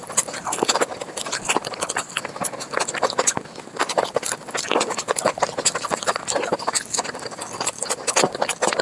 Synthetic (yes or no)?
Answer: no